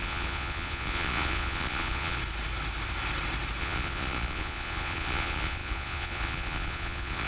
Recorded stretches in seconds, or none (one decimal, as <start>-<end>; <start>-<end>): 2.2-3.6

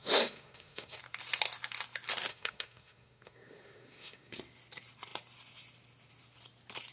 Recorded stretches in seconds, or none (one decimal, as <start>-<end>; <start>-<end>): 1.0-2.3; 4.3-6.9

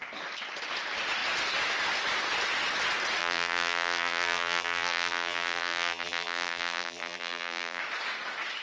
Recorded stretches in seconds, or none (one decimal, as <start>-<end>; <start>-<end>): 0.0-3.2; 7.8-8.6